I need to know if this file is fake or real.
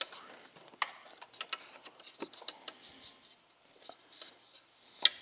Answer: real